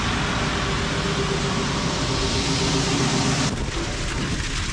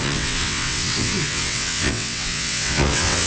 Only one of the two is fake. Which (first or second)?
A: second